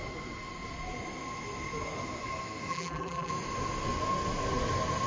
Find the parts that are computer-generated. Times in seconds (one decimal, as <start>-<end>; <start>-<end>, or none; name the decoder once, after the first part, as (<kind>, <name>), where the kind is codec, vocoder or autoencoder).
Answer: 2.7-3.3 (vocoder, BigVGAN v2)